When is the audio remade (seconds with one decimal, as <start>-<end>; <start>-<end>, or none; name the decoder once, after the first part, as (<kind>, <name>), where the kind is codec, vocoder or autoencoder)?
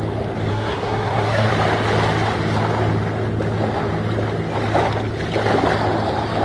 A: 0.5-1.5 (codec, SNAC)